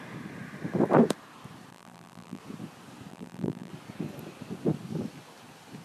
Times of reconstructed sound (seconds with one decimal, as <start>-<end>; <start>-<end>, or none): 1.7-2.4; 3.1-3.7